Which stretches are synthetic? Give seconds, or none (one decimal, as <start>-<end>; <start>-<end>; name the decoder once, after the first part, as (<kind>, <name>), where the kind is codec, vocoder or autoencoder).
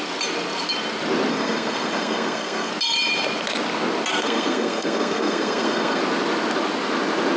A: 1.3-2.7 (codec, SNAC); 4.1-6.0